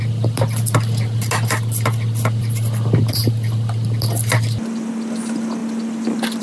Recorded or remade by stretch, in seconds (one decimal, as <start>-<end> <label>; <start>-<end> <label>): 0.0-6.4 recorded